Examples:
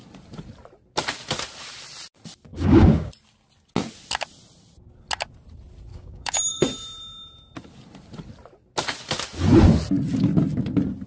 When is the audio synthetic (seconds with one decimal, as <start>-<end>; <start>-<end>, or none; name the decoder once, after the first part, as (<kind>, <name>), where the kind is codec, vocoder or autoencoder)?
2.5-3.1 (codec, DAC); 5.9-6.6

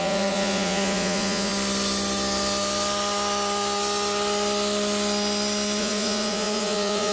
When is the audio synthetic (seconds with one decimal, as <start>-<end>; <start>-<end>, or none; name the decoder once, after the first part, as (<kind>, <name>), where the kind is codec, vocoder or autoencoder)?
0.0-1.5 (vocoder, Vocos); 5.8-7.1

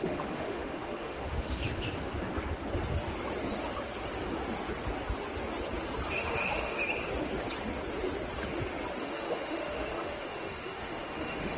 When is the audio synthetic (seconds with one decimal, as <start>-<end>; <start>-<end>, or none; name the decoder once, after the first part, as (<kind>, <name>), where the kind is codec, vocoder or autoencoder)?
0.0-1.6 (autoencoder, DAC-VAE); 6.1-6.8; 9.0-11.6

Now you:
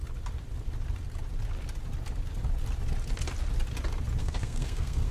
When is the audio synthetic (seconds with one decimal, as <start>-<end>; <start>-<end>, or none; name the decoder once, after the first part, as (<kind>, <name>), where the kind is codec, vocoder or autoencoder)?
4.2-5.1 (codec, SNAC)

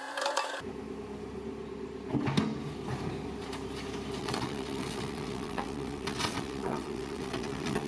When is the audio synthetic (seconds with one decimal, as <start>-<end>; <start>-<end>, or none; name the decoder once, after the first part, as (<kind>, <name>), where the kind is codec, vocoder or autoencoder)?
4.2-7.9 (vocoder, WaveNeXt)

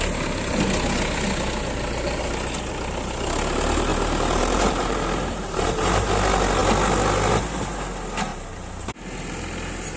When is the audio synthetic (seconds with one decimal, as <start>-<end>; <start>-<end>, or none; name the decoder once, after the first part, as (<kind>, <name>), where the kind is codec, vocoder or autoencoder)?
3.9-6.1 (vocoder, BigVGAN v2)

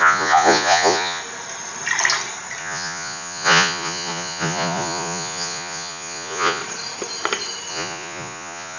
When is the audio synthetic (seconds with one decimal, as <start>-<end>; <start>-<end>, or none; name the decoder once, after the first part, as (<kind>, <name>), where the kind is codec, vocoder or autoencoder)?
0.0-1.2 (vocoder, Vocos); 2.6-6.6; 7.7-8.8